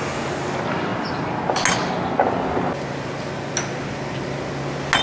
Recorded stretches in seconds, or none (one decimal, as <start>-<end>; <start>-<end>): 0.0-5.0